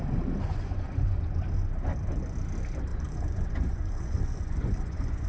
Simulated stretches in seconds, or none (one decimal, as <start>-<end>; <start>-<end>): 0.5-1.4; 2.9-5.3